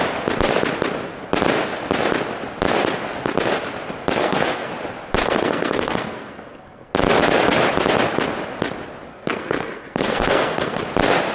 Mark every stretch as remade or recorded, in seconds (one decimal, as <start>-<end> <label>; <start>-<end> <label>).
0.0-4.2 recorded; 4.2-4.7 remade; 4.7-5.2 recorded; 5.2-6.9 remade; 6.9-9.1 recorded; 9.1-10.8 remade; 10.8-11.3 recorded